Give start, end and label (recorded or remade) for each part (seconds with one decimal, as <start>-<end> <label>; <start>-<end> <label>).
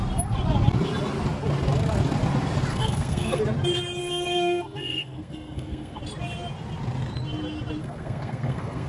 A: 0.0-2.7 recorded; 2.7-3.4 remade; 3.4-4.0 recorded; 4.0-6.0 remade; 6.0-7.8 recorded; 7.8-8.9 remade